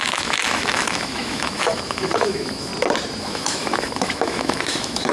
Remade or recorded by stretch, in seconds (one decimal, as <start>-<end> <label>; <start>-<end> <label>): 0.0-2.7 remade; 2.7-3.2 recorded; 3.2-5.1 remade